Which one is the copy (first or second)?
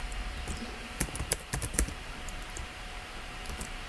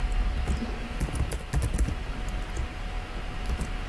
first